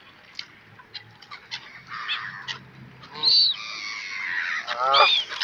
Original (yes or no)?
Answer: yes